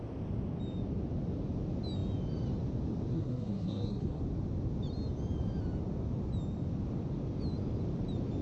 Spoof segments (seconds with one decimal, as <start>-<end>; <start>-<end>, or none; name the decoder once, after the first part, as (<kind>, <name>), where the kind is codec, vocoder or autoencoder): 3.1-4.2 (codec, SNAC)